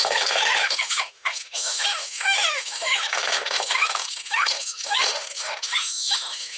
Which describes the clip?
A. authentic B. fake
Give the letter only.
B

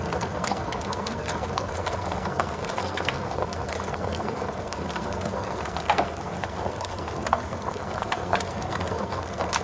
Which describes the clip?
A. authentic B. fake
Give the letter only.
B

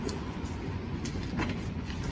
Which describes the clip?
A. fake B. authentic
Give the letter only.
A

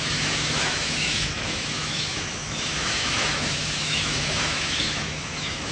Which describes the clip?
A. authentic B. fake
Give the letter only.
B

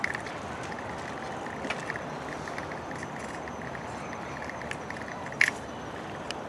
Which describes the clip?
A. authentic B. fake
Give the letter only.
A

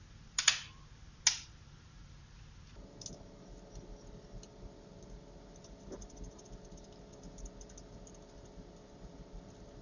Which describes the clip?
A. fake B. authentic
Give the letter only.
B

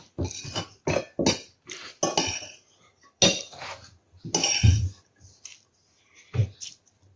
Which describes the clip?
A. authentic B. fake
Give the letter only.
A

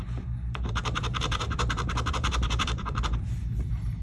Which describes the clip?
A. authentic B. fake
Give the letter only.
B